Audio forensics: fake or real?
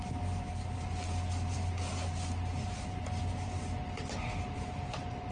real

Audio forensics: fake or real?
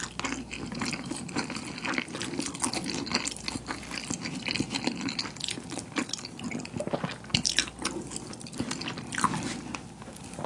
real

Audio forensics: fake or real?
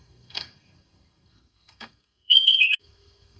fake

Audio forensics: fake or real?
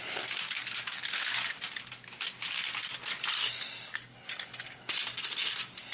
real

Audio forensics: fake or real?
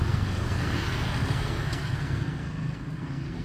fake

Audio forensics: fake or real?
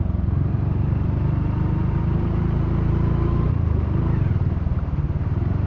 real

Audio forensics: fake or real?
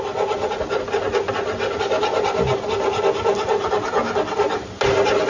real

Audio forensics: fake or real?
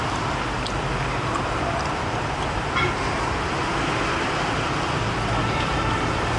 real